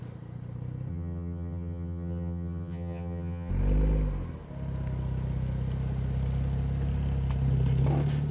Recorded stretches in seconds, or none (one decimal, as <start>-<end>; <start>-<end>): 0.0-0.9; 3.5-8.3

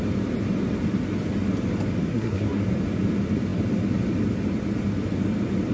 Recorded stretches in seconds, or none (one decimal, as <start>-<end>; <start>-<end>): 0.0-2.0; 2.6-5.7

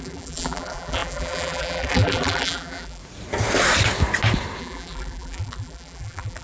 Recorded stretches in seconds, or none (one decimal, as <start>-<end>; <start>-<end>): 3.0-4.6